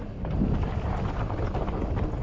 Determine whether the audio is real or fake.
real